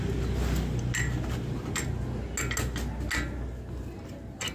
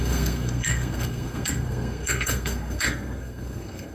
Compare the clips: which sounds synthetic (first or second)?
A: second